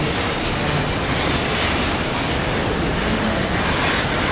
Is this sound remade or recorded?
recorded